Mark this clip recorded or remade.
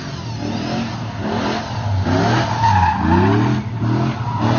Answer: recorded